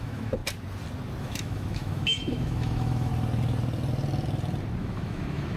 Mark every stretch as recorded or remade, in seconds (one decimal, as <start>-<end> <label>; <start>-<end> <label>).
0.0-0.4 remade; 0.4-1.2 recorded; 1.2-3.1 remade; 3.1-4.8 recorded; 4.8-5.6 remade